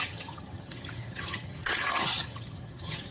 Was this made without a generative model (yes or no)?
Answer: no